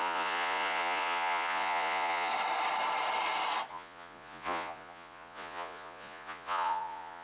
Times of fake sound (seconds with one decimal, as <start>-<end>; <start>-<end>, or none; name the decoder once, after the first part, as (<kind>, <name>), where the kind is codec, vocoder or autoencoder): 0.0-2.3 (vocoder, Vocos); 3.7-7.2